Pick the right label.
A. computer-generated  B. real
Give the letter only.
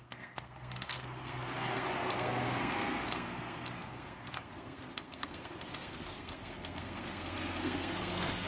A